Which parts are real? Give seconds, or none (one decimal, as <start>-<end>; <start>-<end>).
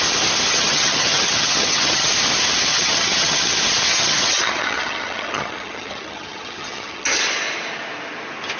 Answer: 0.0-0.5; 2.1-2.7; 3.5-3.9; 7.2-8.6